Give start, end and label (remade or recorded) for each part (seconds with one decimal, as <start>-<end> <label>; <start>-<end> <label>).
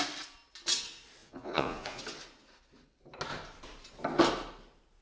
0.0-1.2 recorded; 1.2-2.0 remade; 2.0-5.0 recorded